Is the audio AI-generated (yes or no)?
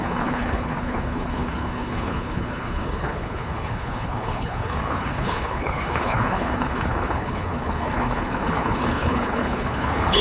yes